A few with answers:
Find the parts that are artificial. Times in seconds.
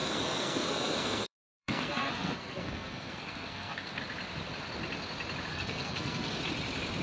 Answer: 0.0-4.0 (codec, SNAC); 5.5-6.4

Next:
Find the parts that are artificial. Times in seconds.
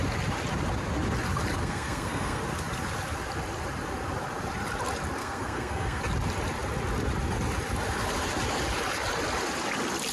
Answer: 1.6-2.4 (codec, SNAC); 5.2-6.0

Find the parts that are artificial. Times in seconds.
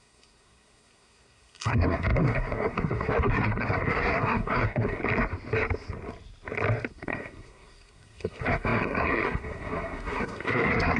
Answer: 0.0-5.0 (codec, SNAC); 6.9-11.0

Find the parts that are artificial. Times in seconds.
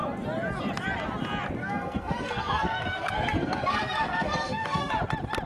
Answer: 1.6-4.9 (codec, SNAC)